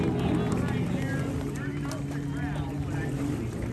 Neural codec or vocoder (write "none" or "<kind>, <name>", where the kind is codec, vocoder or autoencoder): none